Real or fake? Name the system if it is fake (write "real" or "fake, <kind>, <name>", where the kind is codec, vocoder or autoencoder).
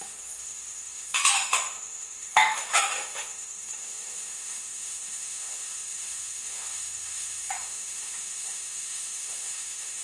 fake, autoencoder, DAC-VAE